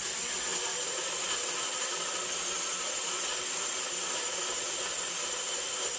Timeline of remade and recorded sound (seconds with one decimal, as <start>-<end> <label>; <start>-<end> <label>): 0.0-6.0 recorded